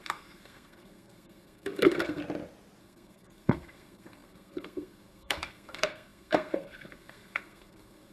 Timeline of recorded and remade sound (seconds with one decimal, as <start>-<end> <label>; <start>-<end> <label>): 0.0-2.2 remade; 2.2-2.8 recorded; 2.8-8.1 remade

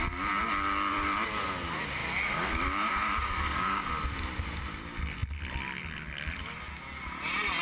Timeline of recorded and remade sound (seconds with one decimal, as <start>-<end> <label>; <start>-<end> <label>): 0.0-2.0 recorded; 2.0-3.9 remade; 3.9-7.6 recorded